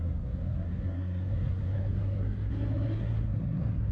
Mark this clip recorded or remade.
remade